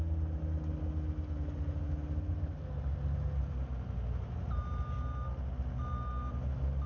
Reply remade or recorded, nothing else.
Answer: recorded